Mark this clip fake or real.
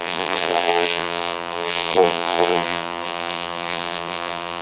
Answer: fake